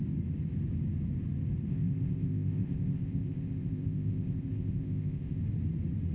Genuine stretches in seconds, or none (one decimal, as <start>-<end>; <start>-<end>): 0.0-1.7; 5.4-6.1

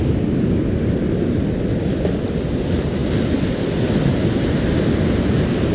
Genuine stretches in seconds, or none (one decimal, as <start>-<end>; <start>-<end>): 0.0-3.0; 4.2-5.7

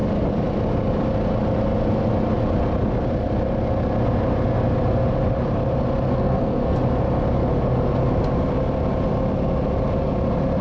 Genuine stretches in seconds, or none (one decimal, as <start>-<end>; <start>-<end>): 0.0-6.1; 6.8-10.6

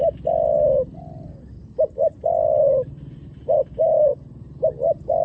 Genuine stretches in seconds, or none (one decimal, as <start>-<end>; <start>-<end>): 0.0-5.2

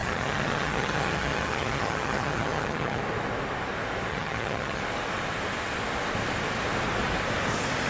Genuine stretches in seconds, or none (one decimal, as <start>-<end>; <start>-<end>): 3.0-4.1; 4.8-7.9

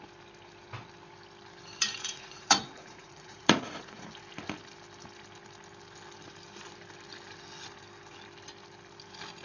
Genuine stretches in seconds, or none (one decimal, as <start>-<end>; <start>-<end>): 0.0-1.8; 4.1-9.4

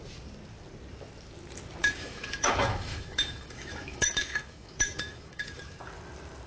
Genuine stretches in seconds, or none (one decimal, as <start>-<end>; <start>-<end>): 0.0-1.8; 5.7-6.5

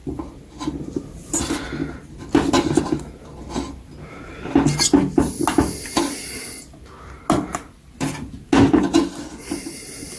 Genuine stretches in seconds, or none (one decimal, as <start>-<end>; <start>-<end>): 0.8-7.5; 8.4-10.2